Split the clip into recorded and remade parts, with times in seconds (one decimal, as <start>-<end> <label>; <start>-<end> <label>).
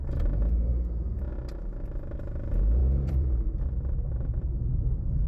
0.0-2.8 recorded; 2.8-3.3 remade; 3.3-5.3 recorded